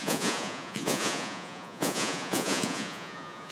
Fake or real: fake